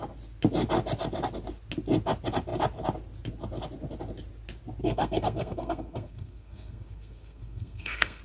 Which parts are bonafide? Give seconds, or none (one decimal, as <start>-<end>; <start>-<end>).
0.0-4.8